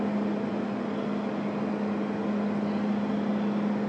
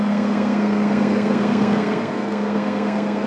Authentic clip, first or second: first